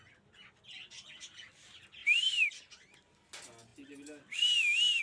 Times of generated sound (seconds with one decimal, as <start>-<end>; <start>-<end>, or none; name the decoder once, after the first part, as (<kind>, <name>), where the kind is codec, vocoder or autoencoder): 2.0-2.5 (vocoder, BigVGAN v2)